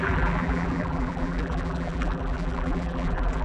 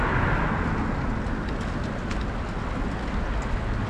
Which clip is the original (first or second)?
second